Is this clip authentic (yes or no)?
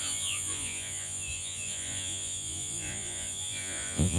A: no